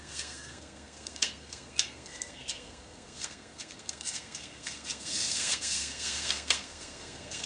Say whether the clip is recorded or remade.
remade